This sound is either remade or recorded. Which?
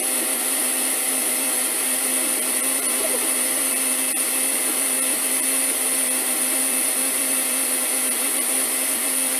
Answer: remade